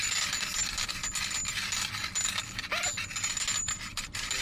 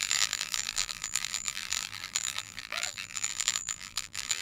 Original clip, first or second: first